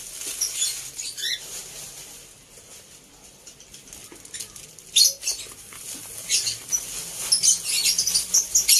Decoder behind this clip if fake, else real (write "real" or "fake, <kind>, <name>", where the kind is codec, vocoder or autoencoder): real